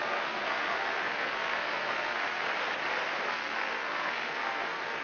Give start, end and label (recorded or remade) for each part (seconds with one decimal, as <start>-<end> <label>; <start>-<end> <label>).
0.0-2.5 remade; 2.5-3.3 recorded; 3.3-5.0 remade